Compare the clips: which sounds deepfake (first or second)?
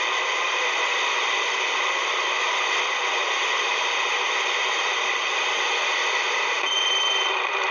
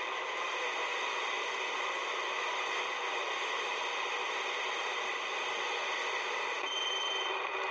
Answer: first